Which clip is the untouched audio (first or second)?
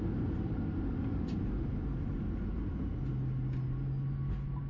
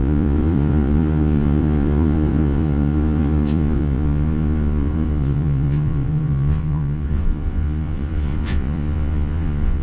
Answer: first